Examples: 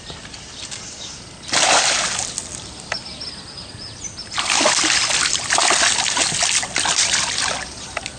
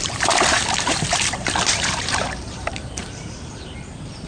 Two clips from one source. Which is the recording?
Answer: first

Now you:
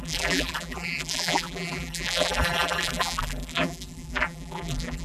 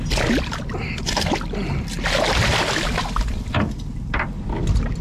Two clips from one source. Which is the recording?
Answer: second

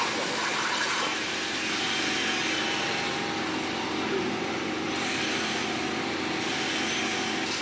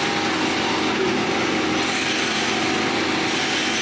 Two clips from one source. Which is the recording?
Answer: second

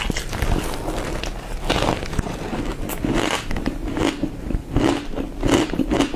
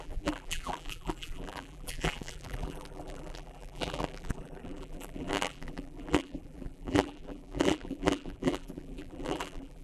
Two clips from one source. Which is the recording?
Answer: first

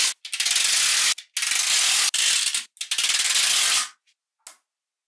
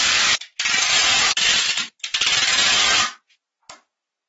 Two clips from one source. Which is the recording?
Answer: first